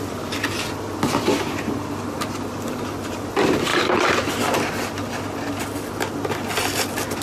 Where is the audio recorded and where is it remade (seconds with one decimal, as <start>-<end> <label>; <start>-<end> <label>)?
0.0-7.2 recorded